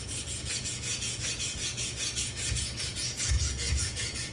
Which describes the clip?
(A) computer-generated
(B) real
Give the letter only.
A